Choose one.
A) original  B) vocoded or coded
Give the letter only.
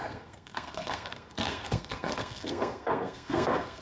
B